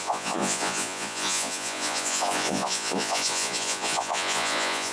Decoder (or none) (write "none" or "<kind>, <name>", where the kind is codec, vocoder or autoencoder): vocoder, Vocos